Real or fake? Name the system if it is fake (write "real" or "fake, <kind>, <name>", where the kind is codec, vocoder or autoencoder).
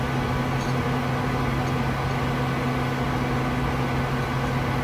real